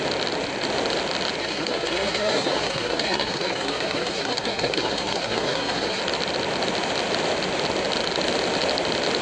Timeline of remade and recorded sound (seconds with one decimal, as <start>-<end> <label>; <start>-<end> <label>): 0.0-1.4 recorded; 1.4-6.0 remade; 6.0-9.2 recorded